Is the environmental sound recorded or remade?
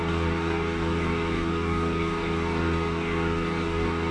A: remade